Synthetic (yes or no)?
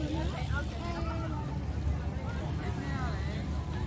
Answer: no